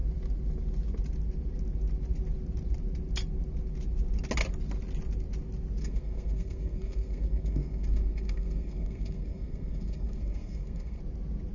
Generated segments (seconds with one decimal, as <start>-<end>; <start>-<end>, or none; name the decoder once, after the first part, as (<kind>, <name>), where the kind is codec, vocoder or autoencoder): 5.8-11.0 (codec, SNAC)